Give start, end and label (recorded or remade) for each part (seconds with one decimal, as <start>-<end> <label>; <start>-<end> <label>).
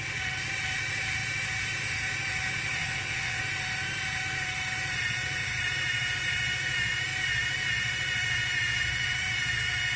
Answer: 0.0-2.7 recorded; 2.7-3.4 remade; 3.4-10.0 recorded